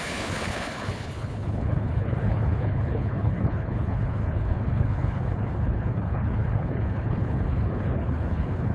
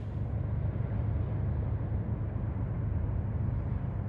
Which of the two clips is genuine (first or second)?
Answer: second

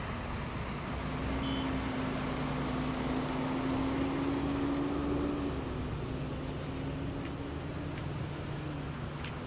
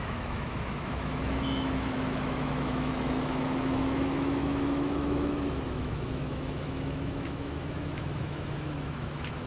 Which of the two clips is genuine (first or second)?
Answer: first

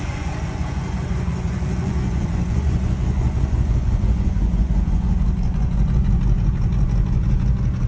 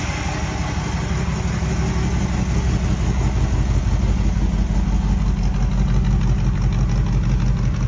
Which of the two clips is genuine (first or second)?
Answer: second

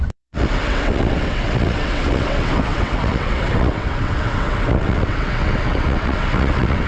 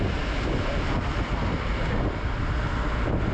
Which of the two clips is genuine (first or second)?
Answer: second